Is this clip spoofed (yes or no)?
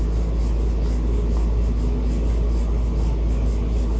no